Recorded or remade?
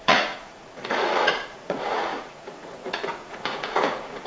remade